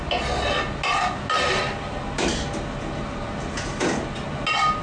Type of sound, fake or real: real